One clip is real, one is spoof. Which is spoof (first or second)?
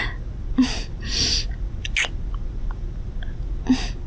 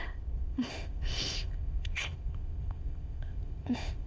second